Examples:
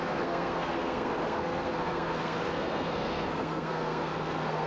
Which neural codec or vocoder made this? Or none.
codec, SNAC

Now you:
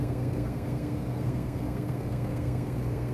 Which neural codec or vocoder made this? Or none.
codec, SNAC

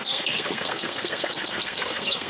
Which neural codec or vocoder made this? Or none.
codec, SNAC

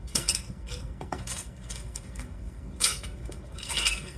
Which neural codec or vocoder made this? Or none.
codec, SNAC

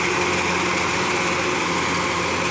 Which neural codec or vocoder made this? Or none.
none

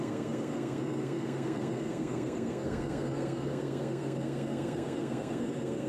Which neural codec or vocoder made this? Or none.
codec, SNAC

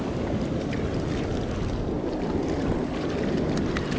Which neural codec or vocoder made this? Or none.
none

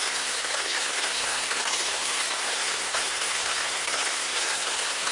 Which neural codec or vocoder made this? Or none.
codec, SNAC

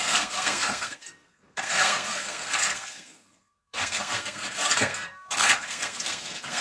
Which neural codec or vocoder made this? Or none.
codec, SNAC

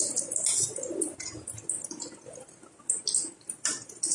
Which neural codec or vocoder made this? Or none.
none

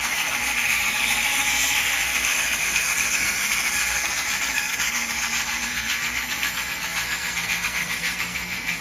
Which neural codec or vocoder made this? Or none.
codec, SNAC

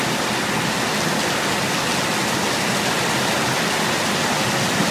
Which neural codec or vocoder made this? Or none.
none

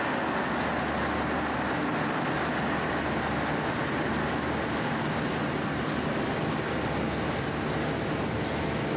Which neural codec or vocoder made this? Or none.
none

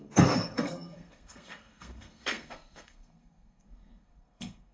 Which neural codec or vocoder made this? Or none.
codec, SNAC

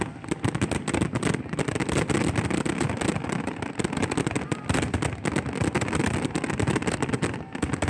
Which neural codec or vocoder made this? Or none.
none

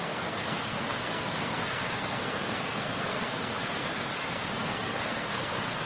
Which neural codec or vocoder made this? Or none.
codec, SNAC